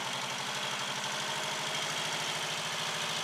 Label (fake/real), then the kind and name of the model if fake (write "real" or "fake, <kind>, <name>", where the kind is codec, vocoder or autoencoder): real